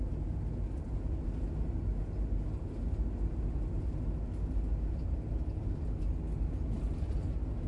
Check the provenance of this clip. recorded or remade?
recorded